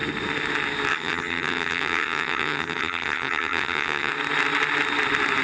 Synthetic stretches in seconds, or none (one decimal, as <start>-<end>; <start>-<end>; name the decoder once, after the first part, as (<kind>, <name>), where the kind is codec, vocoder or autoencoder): 0.9-4.1 (vocoder, HiFi-GAN)